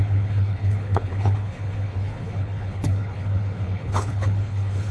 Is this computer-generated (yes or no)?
yes